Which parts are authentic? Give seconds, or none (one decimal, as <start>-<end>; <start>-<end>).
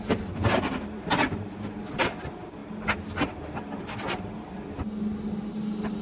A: 0.0-6.0